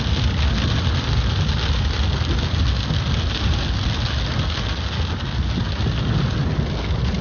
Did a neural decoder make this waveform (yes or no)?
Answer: no